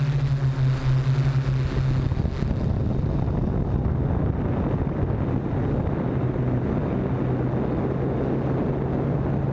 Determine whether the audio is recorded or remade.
recorded